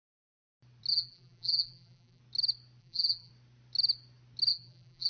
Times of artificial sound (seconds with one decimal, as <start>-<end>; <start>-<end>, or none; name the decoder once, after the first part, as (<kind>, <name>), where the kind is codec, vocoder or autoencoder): 0.0-0.4 (vocoder, BigVGAN v2); 0.9-2.2; 2.8-3.3; 4.5-5.1